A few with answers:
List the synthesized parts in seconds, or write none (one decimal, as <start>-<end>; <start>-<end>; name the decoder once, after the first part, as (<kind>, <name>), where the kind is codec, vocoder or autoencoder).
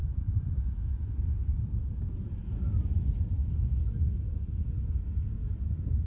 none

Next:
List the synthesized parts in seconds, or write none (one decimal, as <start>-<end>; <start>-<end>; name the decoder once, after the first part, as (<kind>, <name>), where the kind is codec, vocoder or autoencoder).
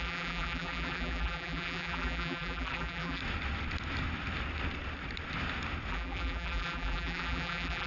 0.0-3.2 (vocoder, BigVGAN v2); 5.9-7.9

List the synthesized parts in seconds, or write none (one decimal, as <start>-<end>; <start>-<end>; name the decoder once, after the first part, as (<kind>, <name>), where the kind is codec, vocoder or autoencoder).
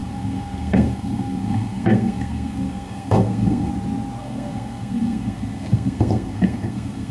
0.0-3.7 (codec, SNAC); 4.2-7.1